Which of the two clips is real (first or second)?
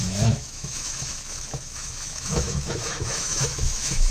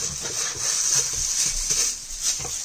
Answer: second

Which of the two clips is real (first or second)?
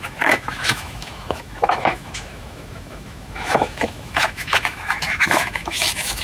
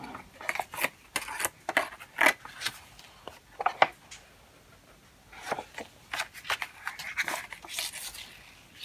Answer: second